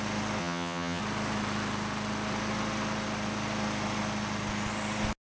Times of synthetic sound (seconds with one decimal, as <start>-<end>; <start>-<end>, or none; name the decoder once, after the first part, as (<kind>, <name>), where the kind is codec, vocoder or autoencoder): 0.4-1.0 (vocoder, HiFi-GAN)